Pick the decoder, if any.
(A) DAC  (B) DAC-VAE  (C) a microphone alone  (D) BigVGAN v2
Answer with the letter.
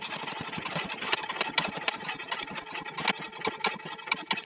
C